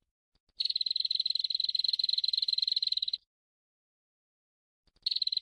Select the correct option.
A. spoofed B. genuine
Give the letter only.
B